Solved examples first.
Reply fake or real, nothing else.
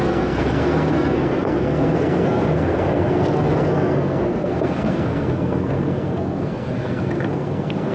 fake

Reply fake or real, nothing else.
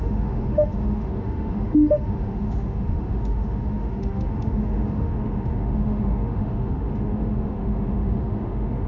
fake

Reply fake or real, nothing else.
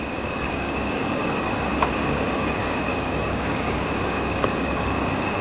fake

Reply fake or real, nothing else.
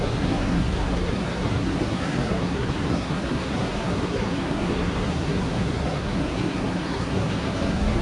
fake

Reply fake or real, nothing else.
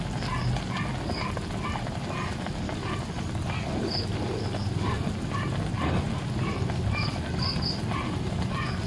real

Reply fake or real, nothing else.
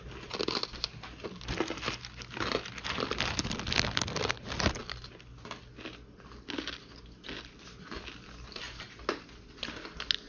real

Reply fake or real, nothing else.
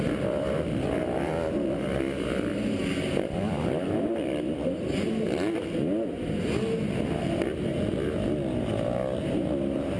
real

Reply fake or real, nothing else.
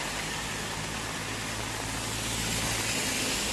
real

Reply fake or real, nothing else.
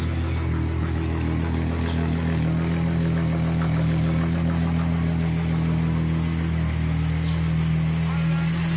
real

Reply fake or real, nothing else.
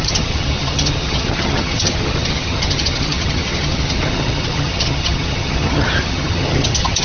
fake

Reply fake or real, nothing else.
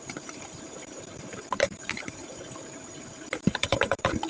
fake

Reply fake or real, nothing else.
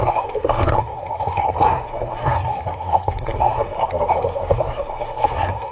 fake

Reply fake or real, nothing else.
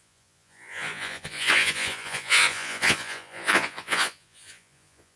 fake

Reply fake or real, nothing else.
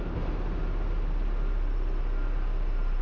real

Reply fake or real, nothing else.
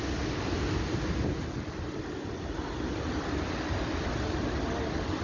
real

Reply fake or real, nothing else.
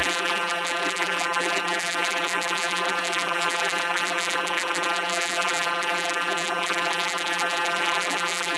fake